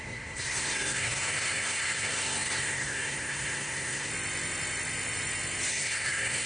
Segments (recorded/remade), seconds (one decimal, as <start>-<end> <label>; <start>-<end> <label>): 0.0-4.1 remade; 4.1-5.7 recorded; 5.7-6.5 remade